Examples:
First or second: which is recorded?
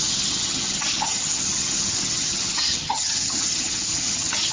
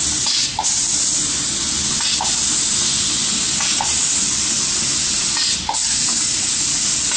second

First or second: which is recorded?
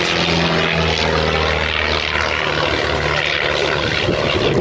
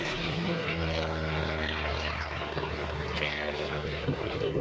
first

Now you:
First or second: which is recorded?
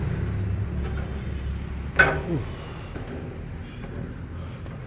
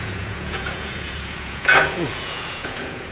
first